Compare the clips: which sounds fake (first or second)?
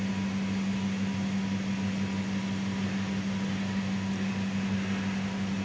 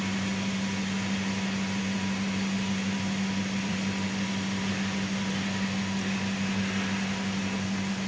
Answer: second